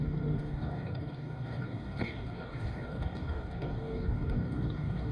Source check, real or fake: fake